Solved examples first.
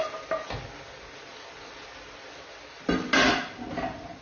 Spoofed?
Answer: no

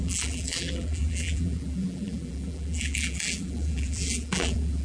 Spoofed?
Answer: yes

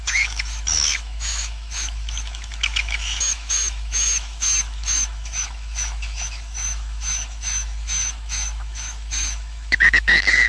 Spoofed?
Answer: yes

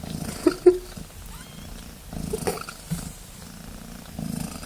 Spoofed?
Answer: no